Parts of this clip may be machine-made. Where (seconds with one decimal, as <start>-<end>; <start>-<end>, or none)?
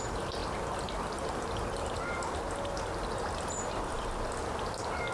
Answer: none